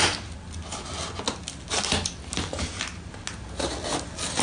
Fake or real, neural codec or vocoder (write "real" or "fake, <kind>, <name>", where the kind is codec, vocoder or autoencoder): real